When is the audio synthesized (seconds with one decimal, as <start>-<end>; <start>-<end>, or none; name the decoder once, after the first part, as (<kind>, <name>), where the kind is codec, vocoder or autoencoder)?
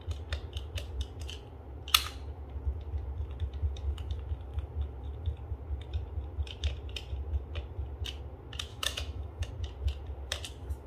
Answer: 8.7-9.5 (autoencoder, DAC-VAE)